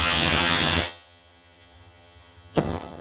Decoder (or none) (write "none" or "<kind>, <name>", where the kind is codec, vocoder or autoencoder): vocoder, HiFi-GAN